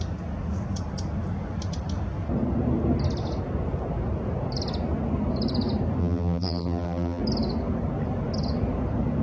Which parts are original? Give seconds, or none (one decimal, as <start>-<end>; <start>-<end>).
0.0-6.0; 7.2-9.2